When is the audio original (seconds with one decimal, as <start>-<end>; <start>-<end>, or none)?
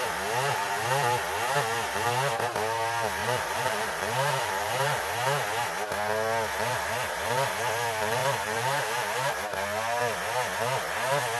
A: 0.0-3.2; 5.0-8.2; 9.3-11.4